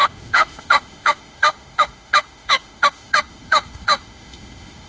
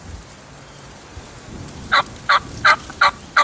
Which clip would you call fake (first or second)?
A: first